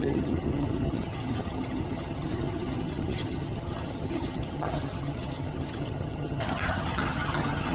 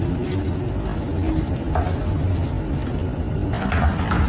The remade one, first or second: first